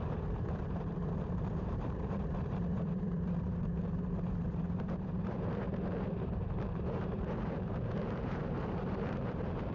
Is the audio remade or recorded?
remade